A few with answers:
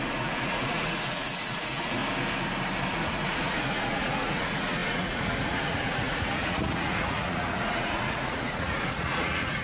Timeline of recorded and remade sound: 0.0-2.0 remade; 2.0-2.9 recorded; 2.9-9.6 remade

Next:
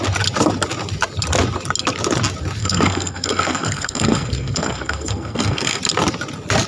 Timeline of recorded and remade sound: 0.0-2.6 recorded; 2.6-5.8 remade; 5.8-6.7 recorded

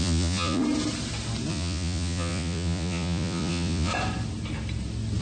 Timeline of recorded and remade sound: 0.0-0.6 remade; 0.6-1.5 recorded; 1.5-3.9 remade; 3.9-5.2 recorded